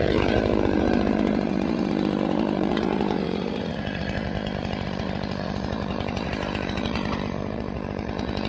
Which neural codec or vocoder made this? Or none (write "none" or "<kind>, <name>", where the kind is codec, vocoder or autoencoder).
vocoder, Vocos